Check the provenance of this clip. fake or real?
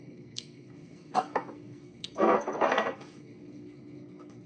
fake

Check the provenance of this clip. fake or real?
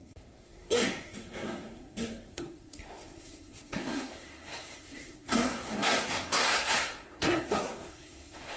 fake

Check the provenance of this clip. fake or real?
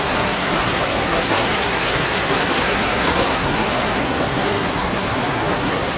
fake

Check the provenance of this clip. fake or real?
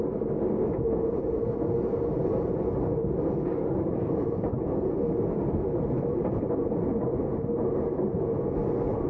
real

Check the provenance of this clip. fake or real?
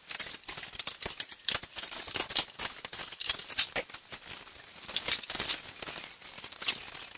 real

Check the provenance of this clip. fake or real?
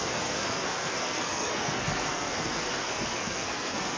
fake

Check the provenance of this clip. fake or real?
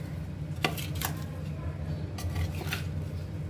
real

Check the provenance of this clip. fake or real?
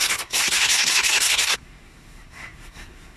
fake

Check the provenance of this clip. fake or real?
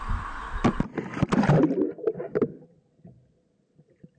real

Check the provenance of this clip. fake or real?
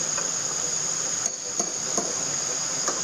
real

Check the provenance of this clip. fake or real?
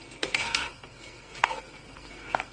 fake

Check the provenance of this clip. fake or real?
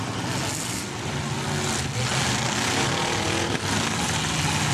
real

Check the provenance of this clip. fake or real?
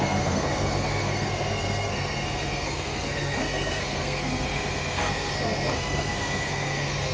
fake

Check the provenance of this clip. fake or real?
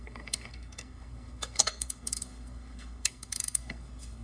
fake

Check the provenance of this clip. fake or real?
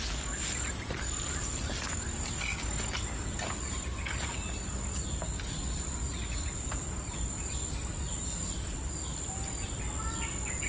real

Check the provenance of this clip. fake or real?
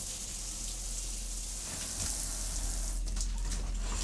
real